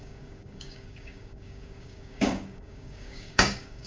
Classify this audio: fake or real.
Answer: fake